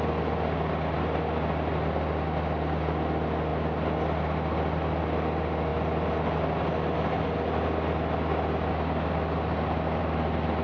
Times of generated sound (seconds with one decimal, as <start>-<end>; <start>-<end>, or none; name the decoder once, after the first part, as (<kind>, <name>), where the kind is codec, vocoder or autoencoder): none